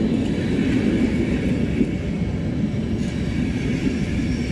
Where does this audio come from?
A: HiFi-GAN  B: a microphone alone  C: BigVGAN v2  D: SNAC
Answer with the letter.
B